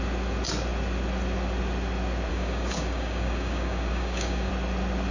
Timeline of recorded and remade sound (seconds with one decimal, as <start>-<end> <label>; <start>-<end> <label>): 0.0-2.3 recorded; 2.3-4.5 remade; 4.5-5.1 recorded